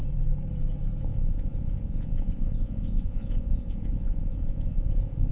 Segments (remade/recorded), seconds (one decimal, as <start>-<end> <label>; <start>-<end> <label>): 0.0-1.0 recorded; 1.0-5.3 remade